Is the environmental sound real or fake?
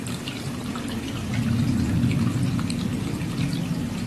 real